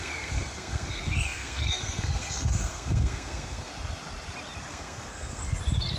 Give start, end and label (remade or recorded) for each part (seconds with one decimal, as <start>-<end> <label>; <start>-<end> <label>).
0.0-3.7 remade; 3.7-4.7 recorded; 4.7-5.4 remade; 5.4-6.0 recorded